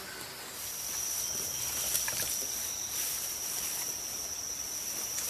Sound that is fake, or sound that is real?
real